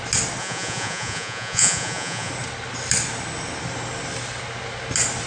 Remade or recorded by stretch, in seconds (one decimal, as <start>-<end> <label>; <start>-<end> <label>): 0.0-0.4 recorded; 0.4-2.3 remade; 2.3-5.3 recorded